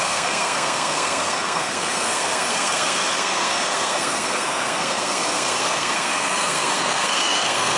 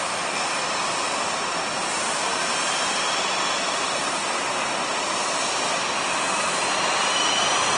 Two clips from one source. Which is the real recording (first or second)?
second